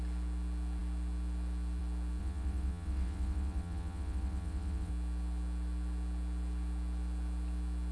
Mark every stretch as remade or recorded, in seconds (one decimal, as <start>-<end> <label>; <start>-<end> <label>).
0.0-2.2 recorded; 2.2-4.9 remade; 4.9-7.9 recorded